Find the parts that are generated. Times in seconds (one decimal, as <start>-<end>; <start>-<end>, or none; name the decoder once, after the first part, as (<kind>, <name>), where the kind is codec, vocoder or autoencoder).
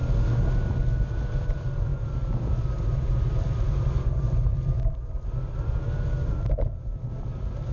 none